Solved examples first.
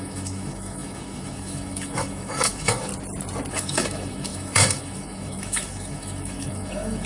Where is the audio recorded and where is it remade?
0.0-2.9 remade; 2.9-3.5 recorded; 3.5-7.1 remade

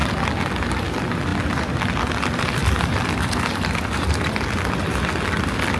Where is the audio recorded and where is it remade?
0.0-1.3 recorded; 1.3-4.8 remade; 4.8-5.8 recorded

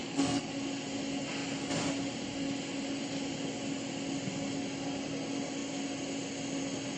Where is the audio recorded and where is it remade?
0.0-0.5 remade; 0.5-7.0 recorded

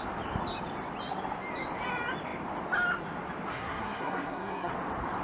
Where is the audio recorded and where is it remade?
0.0-3.5 recorded; 3.5-4.7 remade; 4.7-5.2 recorded

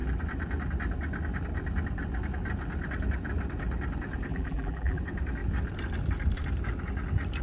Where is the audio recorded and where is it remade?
0.0-4.3 recorded; 4.3-5.0 remade; 5.0-7.4 recorded